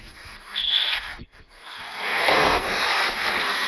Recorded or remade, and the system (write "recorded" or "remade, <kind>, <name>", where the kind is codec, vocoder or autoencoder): remade, codec, SNAC